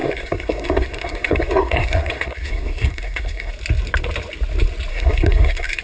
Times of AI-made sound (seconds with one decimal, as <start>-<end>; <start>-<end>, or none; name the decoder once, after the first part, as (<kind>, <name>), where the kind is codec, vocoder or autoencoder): 0.0-3.5 (codec, SNAC); 4.9-5.8